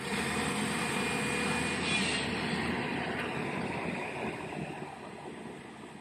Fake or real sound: real